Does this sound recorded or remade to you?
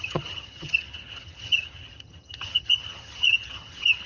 remade